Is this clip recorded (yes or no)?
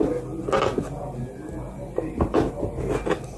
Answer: yes